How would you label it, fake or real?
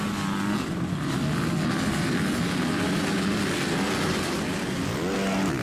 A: real